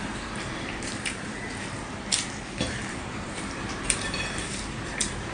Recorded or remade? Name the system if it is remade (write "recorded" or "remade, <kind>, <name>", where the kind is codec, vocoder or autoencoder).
remade, vocoder, BigVGAN v2